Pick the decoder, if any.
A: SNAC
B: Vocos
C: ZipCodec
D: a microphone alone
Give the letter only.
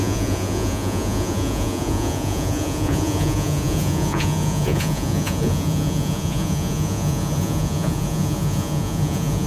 B